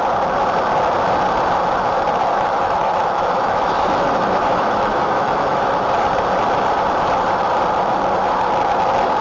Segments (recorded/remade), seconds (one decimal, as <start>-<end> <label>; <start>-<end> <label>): 0.0-2.2 recorded; 2.2-5.9 remade; 5.9-9.2 recorded